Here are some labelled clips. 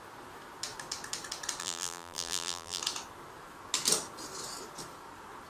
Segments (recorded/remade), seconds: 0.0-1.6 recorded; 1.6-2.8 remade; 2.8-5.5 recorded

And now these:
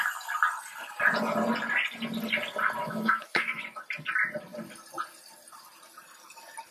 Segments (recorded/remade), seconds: 0.0-2.8 recorded; 2.8-3.6 remade; 3.6-6.7 recorded

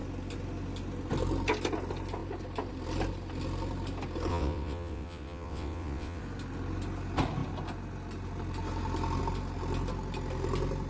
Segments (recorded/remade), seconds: 0.0-4.3 recorded; 4.3-6.2 remade; 6.2-10.9 recorded

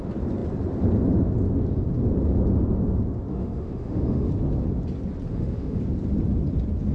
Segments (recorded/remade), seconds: 0.0-3.3 recorded; 3.3-4.3 remade; 4.3-5.3 recorded; 5.3-5.8 remade; 5.8-6.9 recorded